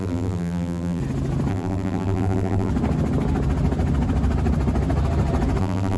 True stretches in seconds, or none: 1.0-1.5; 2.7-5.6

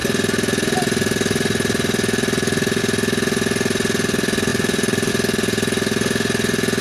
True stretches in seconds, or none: 0.0-4.5; 5.1-6.8

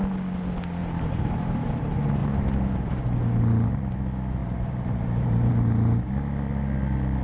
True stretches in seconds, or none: 0.0-0.8; 1.8-2.2; 3.0-4.4; 5.5-7.2

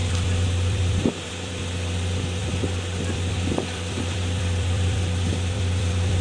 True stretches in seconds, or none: 1.6-2.4

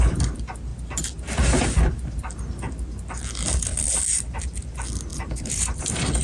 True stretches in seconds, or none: 0.0-5.1; 5.8-6.2

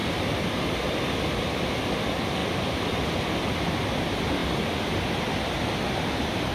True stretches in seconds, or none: 0.7-6.5

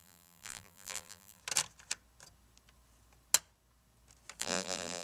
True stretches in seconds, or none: 1.4-4.4